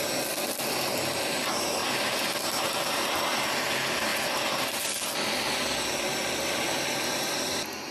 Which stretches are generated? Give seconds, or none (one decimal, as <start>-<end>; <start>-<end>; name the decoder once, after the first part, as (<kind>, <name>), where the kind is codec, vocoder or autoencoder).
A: none